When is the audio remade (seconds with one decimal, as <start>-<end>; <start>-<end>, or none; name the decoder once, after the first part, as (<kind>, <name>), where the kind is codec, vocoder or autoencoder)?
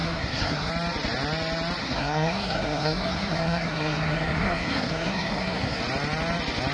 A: 0.0-0.7 (codec, SNAC); 1.8-5.8